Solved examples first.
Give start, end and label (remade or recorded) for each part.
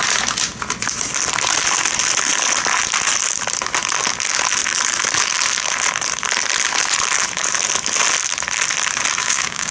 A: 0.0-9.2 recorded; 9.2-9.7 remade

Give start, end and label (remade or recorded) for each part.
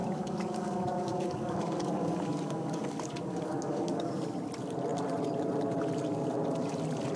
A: 0.0-4.1 remade; 4.1-7.2 recorded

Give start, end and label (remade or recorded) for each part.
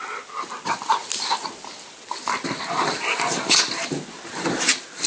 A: 0.0-5.1 recorded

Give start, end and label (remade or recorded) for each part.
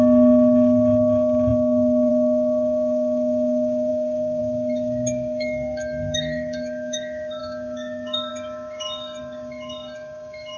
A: 0.0-10.6 remade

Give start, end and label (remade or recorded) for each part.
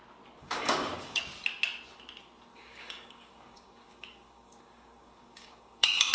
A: 0.0-0.4 recorded; 0.4-1.2 remade; 1.2-2.5 recorded; 2.5-6.1 remade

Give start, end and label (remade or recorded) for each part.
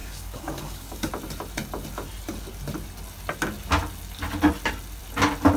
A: 0.0-1.1 remade; 1.1-5.6 recorded